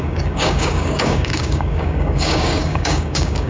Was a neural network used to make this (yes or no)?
yes